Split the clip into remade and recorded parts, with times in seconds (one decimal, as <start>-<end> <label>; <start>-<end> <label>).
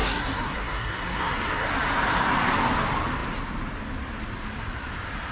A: 0.0-1.7 remade; 1.7-5.3 recorded